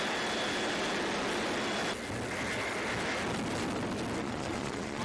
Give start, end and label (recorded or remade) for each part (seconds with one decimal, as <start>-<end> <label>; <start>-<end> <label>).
0.0-4.2 recorded; 4.2-5.0 remade